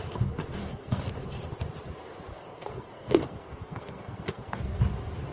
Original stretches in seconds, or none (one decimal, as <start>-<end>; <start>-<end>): 0.0-0.6; 1.1-2.3; 4.8-5.3

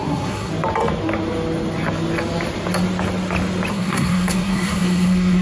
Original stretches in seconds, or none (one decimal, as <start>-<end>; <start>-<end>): 0.5-3.7

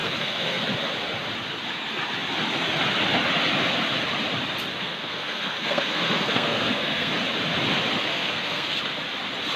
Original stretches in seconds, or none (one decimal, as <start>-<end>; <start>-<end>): 0.6-4.7; 7.1-8.1; 8.8-9.6

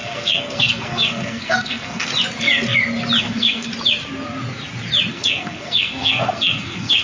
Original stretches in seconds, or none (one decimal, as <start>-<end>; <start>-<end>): 2.1-3.2; 3.7-5.1